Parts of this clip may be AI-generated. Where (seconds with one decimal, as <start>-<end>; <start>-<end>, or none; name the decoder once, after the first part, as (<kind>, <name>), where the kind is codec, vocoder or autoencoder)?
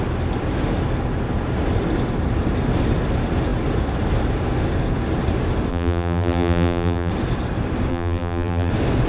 5.7-7.1 (vocoder, BigVGAN v2); 7.9-8.7